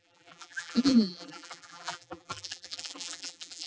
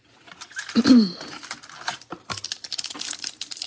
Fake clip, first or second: first